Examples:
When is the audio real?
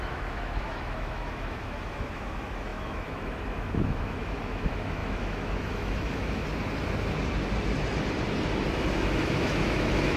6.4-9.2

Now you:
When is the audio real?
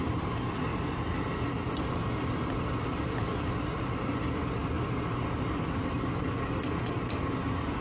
0.0-7.8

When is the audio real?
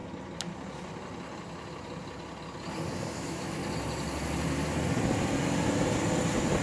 0.0-2.9; 3.6-6.6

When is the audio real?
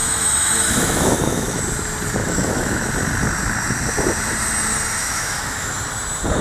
1.6-2.2; 2.9-5.0; 5.7-6.4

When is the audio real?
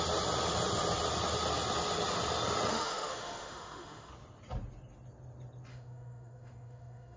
0.0-2.7; 4.1-5.7